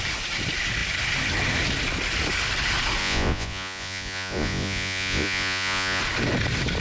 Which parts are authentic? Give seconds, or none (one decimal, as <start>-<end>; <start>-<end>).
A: 0.0-3.0; 6.0-6.8